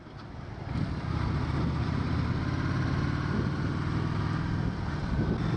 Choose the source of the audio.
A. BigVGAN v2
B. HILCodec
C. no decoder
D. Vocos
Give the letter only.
C